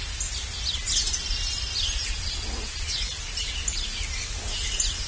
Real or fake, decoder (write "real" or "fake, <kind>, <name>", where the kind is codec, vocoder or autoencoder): real